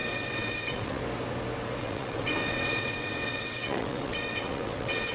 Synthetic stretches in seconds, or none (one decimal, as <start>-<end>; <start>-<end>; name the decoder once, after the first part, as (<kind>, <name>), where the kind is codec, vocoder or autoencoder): 0.0-1.0 (vocoder, WaveNeXt); 1.8-5.1